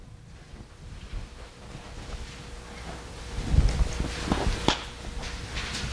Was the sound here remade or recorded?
recorded